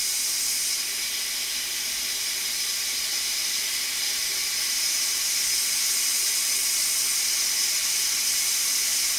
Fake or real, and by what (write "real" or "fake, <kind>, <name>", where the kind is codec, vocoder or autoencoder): real